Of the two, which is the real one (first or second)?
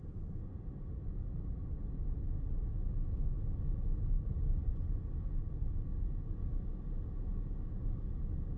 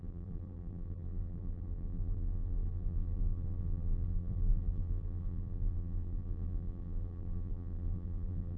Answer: first